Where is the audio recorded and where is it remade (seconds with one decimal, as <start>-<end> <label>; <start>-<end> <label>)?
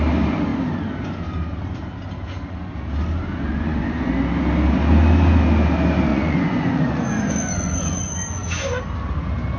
0.0-3.5 recorded; 3.5-4.1 remade; 4.1-6.1 recorded; 6.1-7.9 remade; 7.9-9.6 recorded